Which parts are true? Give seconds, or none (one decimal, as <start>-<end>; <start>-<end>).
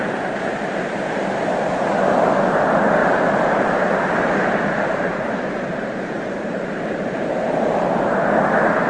0.0-3.0; 8.3-8.9